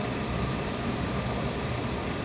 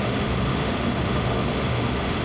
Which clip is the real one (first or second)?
first